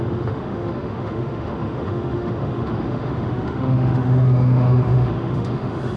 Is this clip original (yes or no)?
no